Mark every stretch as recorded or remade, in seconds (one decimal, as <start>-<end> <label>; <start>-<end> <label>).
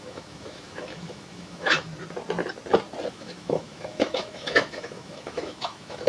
0.0-1.9 remade; 1.9-3.1 recorded; 3.1-6.1 remade